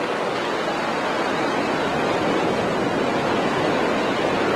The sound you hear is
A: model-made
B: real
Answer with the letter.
B